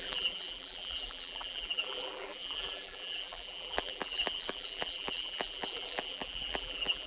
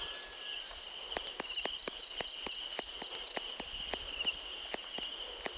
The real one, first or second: second